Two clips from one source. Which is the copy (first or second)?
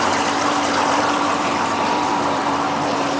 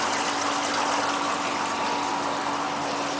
first